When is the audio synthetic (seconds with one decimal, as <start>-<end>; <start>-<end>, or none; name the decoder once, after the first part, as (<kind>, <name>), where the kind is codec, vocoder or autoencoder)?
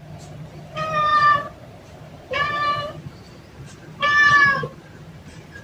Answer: 0.0-5.6 (vocoder, BigVGAN v2)